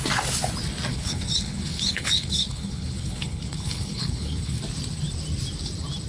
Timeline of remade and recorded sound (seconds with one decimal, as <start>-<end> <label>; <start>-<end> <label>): 0.0-0.9 recorded; 0.9-4.6 remade; 4.6-6.1 recorded

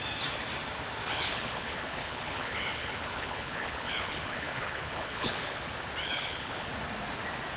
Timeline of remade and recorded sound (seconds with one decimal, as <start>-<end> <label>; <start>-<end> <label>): 0.0-1.0 recorded; 1.0-5.6 remade; 5.6-6.0 recorded; 6.0-6.7 remade; 6.7-7.6 recorded